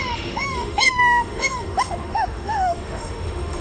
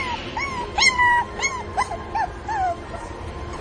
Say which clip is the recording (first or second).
second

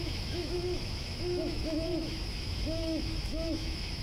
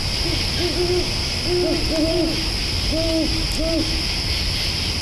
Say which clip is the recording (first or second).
second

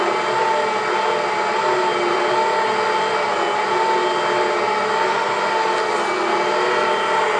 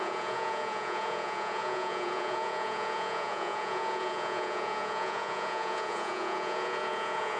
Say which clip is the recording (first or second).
first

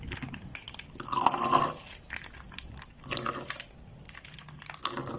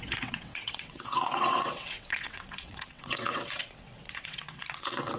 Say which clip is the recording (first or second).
first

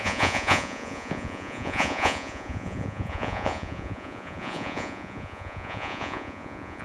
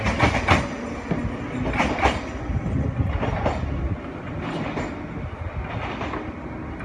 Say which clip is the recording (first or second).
second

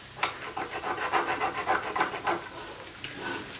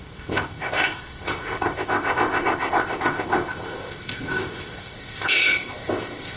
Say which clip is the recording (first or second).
first